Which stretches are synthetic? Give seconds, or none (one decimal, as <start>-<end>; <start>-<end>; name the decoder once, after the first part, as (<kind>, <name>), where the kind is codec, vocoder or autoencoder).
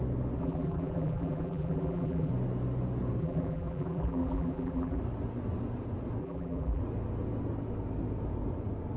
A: 0.4-2.3 (vocoder, BigVGAN v2); 3.2-5.0; 6.2-6.8